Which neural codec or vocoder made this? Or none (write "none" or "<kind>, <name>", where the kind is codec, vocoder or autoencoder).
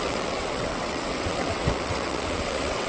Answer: vocoder, WaveNeXt